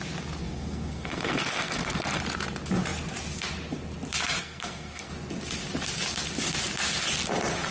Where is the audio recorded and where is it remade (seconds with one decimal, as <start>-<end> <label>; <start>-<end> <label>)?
0.0-0.4 recorded; 0.4-2.2 remade; 2.2-4.4 recorded; 4.4-5.1 remade; 5.1-7.7 recorded